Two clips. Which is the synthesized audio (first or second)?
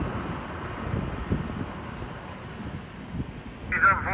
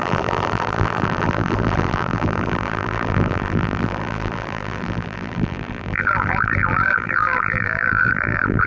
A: second